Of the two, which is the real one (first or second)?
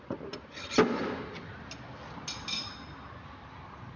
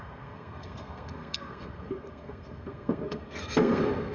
first